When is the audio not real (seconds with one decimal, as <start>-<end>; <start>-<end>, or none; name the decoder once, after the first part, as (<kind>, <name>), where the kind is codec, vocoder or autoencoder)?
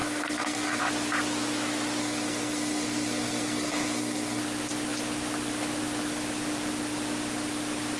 0.0-0.8 (codec, SNAC); 2.0-4.4